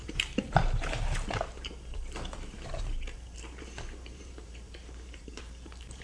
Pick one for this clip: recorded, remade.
remade